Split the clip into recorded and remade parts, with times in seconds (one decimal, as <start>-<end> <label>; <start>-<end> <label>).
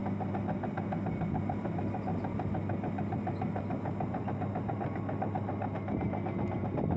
0.0-7.0 recorded